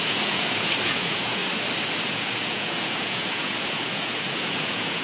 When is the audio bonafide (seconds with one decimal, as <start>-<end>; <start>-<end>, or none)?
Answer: 1.4-2.0